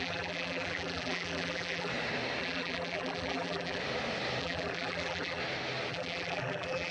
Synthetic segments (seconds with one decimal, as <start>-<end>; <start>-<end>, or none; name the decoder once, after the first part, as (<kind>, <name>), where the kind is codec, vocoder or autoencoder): 0.0-1.9 (vocoder, BigVGAN v2); 2.4-3.8; 4.4-5.4; 5.9-6.9